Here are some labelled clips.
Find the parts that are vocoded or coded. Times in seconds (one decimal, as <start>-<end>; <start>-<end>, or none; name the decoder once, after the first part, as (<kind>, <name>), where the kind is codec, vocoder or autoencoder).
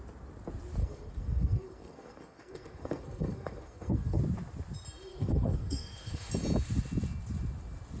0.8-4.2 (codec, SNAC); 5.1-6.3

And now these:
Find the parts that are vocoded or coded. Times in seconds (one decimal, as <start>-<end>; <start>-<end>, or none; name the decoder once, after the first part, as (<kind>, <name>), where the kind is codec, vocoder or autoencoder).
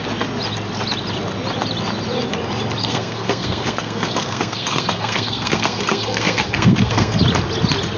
2.8-7.2 (codec, SNAC)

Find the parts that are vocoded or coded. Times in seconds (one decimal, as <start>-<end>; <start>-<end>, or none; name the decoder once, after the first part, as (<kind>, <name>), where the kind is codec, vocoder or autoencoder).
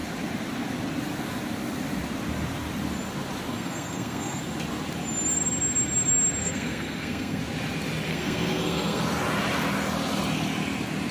3.5-4.4 (codec, SNAC); 6.4-7.4; 8.1-9.0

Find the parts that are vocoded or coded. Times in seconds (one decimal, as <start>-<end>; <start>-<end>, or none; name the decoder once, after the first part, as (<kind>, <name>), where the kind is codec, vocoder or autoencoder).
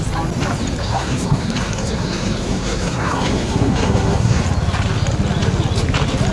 0.8-4.4 (codec, SNAC)